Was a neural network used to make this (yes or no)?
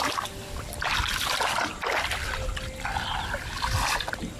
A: no